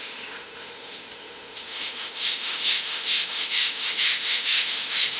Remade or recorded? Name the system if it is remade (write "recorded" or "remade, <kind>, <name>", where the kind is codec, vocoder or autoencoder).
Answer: remade, autoencoder, DAC-VAE